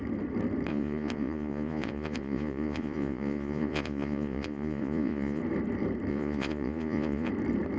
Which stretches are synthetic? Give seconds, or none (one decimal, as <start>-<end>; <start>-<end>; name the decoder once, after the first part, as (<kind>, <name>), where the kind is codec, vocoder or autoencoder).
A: 0.7-5.4 (vocoder, Vocos); 6.1-7.3